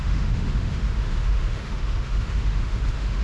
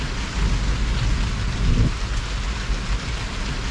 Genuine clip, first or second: second